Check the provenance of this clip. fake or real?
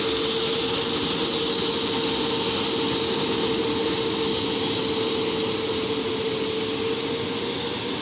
real